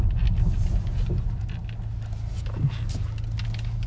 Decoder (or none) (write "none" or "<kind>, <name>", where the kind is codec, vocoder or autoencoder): none